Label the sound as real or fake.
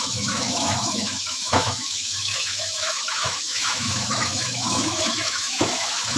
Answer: fake